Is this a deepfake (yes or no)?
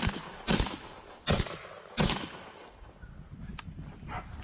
no